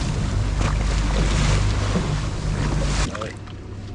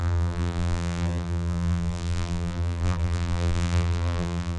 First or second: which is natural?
first